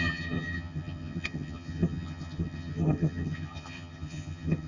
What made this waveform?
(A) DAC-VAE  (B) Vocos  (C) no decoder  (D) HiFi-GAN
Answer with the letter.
D